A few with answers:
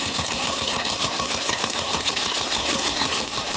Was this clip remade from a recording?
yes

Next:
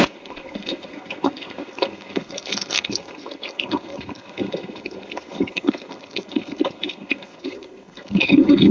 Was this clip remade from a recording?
yes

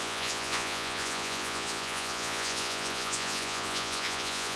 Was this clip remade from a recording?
yes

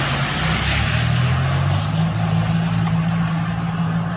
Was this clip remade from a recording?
no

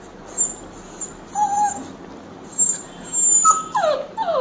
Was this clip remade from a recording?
no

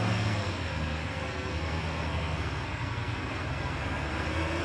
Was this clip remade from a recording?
yes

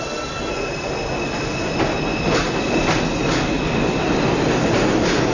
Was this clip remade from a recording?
no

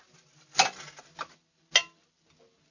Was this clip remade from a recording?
no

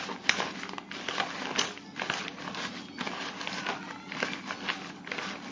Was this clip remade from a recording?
no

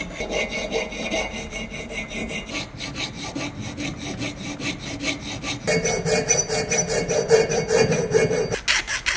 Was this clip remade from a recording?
no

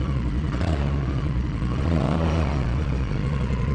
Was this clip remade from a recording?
yes